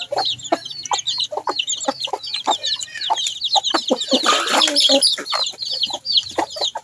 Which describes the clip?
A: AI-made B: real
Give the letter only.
B